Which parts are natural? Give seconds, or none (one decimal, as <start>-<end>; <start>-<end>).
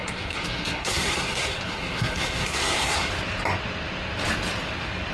3.1-5.1